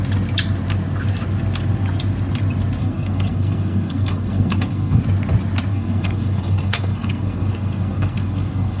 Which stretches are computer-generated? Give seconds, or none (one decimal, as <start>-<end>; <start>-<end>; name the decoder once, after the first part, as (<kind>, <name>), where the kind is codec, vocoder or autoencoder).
2.8-5.0 (codec, SNAC); 5.7-8.8